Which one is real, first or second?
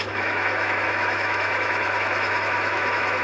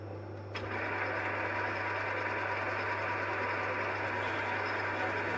second